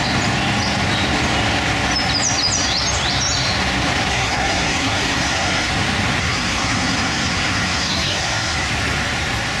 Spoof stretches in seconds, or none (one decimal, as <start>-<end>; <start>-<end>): 4.1-5.7; 6.2-8.7